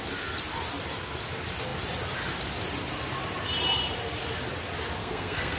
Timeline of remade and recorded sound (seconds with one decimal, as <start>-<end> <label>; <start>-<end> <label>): 0.0-5.0 recorded; 5.0-5.6 remade